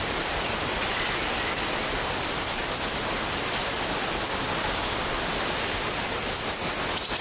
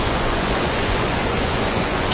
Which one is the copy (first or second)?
second